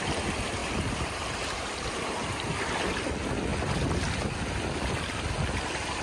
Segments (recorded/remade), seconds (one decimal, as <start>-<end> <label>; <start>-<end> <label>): 0.0-0.6 recorded; 0.6-2.7 remade; 2.7-6.0 recorded